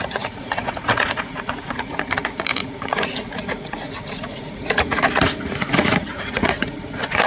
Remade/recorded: remade